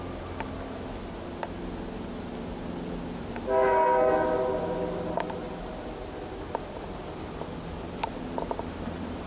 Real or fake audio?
real